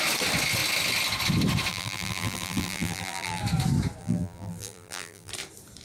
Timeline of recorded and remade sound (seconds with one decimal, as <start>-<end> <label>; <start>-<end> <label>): 0.0-1.7 recorded; 1.7-3.4 remade; 3.4-4.0 recorded; 4.0-5.3 remade; 5.3-5.8 recorded